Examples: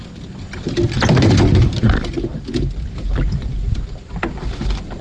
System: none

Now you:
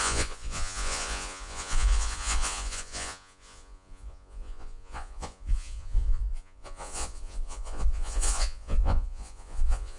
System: vocoder, Vocos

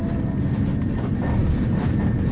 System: none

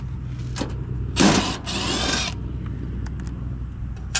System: none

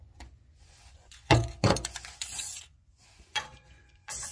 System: vocoder, Vocos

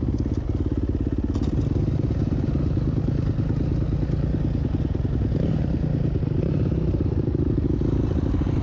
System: none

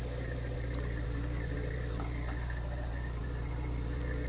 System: none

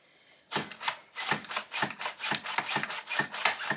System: none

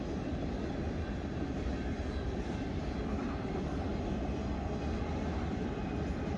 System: none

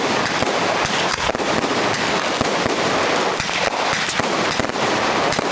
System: none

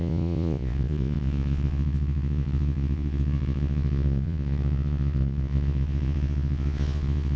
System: vocoder, Vocos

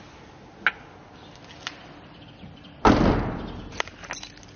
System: none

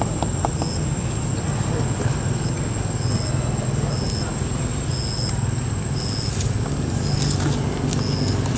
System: none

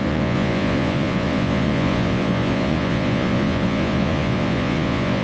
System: vocoder, Vocos